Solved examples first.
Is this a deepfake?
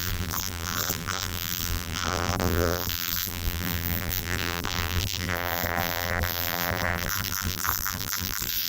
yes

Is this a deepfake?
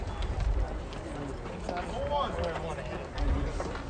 no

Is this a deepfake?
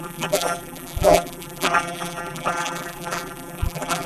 yes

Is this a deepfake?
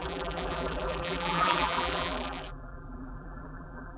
yes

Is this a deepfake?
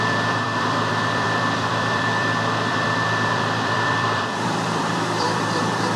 yes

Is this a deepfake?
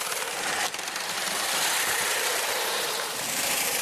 yes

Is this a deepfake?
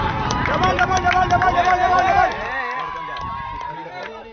yes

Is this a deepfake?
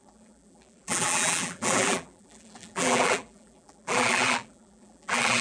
yes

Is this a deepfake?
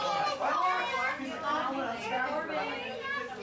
no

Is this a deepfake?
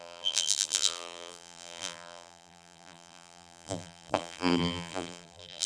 yes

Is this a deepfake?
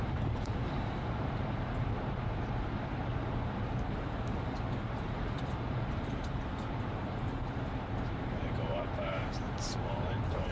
yes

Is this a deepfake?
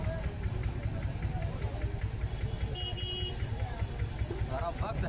no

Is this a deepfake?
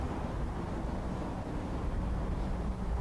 yes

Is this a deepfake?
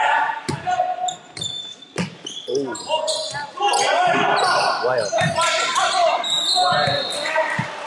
no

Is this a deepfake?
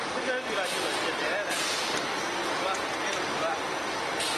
no